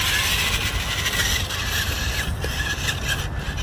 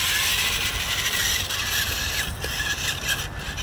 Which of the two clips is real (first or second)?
first